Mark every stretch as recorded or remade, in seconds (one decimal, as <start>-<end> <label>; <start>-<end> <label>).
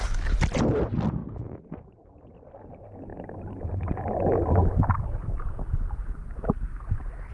0.0-7.3 recorded